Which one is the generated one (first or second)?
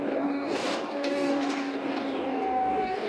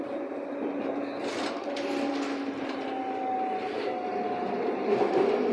first